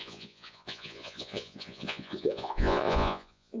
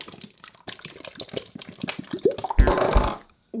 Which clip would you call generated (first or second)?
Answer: first